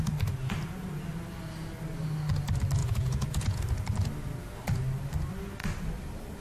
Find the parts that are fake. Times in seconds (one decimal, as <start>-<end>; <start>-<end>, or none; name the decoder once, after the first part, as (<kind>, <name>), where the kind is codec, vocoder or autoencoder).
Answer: 2.8-3.6 (vocoder, Vocos)